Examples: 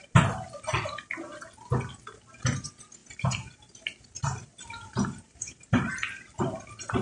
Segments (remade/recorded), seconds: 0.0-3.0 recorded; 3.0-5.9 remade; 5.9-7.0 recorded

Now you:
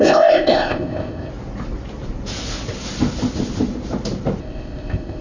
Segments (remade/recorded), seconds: 0.0-1.3 remade; 1.3-4.4 recorded; 4.4-5.2 remade